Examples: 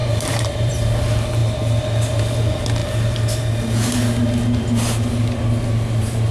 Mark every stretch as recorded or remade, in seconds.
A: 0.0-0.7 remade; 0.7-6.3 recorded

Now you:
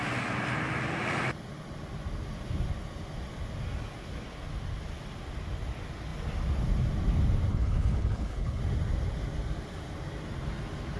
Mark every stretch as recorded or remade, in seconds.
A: 0.0-7.5 recorded; 7.5-8.6 remade; 8.6-11.0 recorded

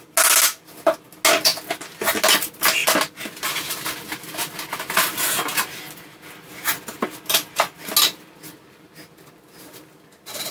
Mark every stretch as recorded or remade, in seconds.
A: 0.0-10.5 recorded

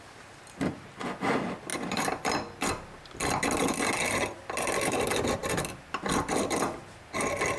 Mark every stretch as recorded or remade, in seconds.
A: 0.0-7.6 recorded

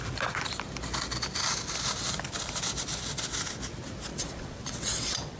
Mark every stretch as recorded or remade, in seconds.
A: 0.0-4.1 recorded; 4.1-5.4 remade